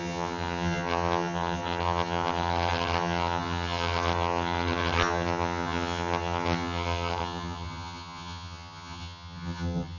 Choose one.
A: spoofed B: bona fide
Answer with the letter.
A